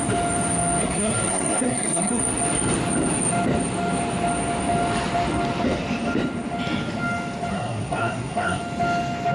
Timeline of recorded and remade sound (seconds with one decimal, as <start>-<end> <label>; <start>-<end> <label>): 0.0-0.8 recorded; 0.8-2.2 remade; 2.2-7.5 recorded; 7.5-8.6 remade; 8.6-9.3 recorded